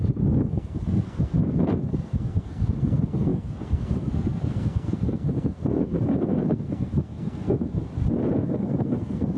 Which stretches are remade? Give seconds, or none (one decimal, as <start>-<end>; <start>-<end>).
0.0-7.8; 8.3-9.4